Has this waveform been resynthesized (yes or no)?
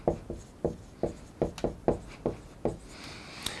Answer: no